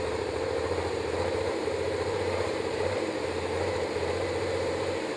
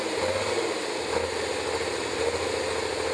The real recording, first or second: second